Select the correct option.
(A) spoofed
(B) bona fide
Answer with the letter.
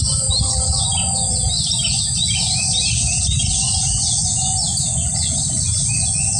B